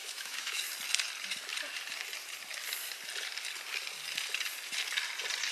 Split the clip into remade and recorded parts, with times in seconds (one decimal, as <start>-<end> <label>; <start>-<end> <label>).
0.0-0.6 remade; 0.6-5.5 recorded